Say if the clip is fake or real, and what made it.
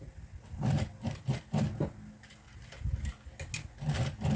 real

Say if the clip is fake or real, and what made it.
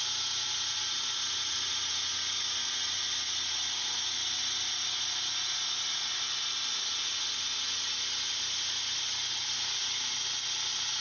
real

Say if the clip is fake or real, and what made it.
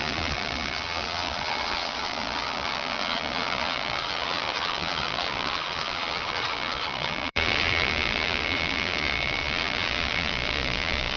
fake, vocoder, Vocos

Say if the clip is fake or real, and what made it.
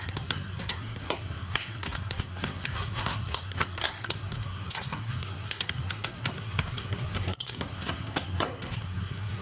fake, codec, SNAC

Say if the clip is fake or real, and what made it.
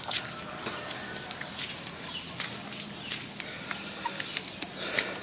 real